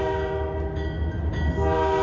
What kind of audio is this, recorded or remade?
recorded